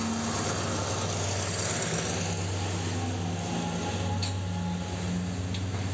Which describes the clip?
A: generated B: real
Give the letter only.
B